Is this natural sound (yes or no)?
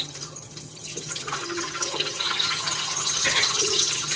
no